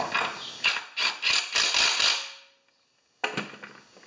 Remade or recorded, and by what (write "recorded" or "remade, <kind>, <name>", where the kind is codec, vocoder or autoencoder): recorded